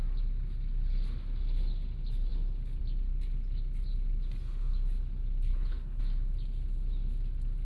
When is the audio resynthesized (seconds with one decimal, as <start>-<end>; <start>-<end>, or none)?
5.5-6.0